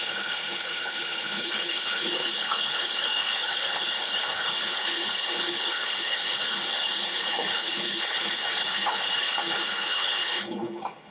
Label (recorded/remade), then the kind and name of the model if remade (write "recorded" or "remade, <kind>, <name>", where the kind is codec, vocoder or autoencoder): remade, codec, HILCodec